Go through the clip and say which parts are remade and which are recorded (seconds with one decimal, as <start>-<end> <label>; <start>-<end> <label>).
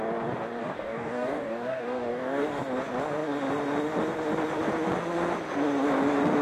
0.0-0.6 recorded; 0.6-2.5 remade; 2.5-6.4 recorded